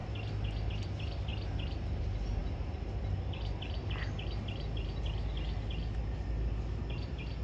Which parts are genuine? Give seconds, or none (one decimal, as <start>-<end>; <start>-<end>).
0.0-7.4